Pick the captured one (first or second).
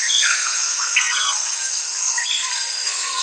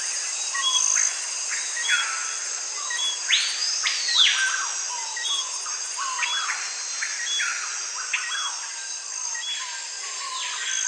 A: second